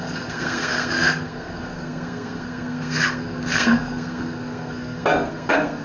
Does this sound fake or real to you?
fake